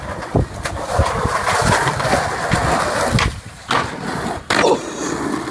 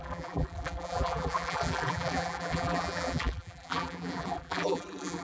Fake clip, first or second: second